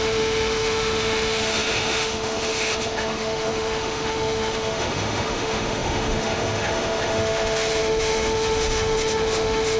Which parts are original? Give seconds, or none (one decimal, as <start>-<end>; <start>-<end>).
none